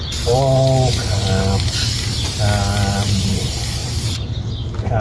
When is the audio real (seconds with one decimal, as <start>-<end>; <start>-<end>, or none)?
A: 0.0-3.8; 4.5-5.0